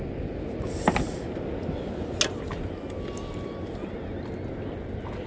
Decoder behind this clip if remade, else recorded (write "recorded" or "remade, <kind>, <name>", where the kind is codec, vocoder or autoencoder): recorded